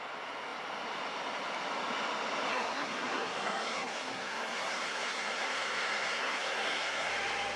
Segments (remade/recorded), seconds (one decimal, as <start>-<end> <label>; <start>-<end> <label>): 0.0-2.5 recorded; 2.5-7.1 remade; 7.1-7.6 recorded